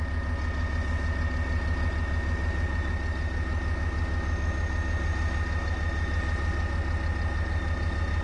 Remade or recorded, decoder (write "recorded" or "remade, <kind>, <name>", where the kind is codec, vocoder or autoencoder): recorded